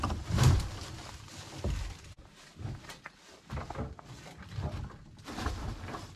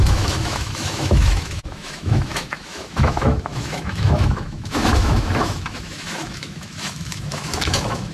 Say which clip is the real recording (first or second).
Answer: first